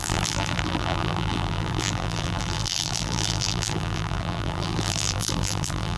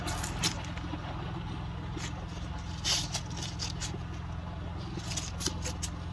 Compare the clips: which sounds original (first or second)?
second